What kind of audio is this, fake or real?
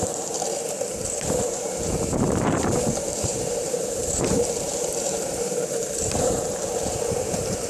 fake